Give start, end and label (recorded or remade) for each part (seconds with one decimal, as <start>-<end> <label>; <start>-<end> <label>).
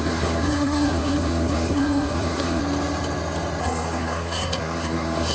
0.0-2.6 remade; 2.6-3.6 recorded; 3.6-5.3 remade